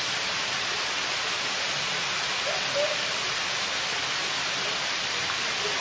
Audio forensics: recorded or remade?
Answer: recorded